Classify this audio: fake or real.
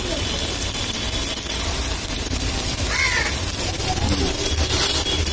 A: real